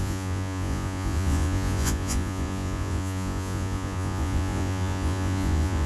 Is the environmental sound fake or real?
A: fake